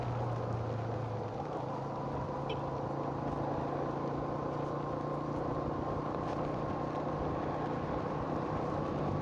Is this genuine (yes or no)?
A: yes